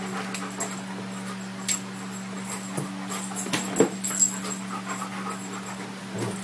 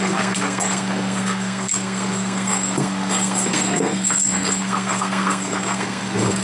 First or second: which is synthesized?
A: second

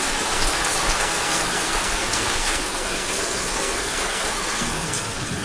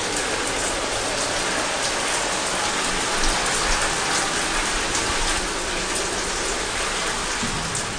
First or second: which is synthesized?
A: first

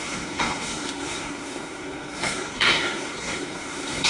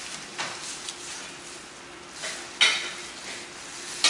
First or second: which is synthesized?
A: first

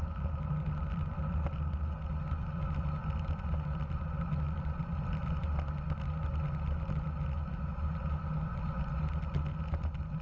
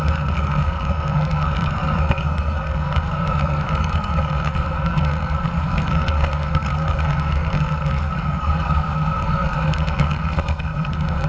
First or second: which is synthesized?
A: second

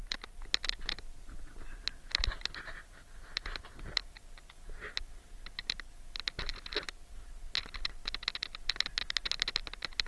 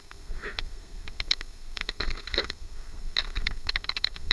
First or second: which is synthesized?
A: second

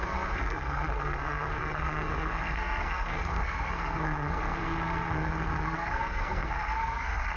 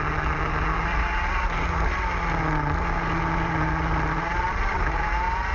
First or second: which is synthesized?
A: first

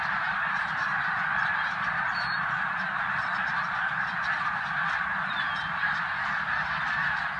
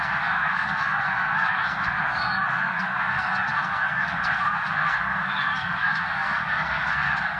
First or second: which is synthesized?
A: second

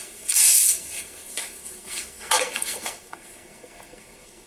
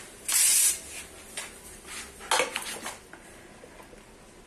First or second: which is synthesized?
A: first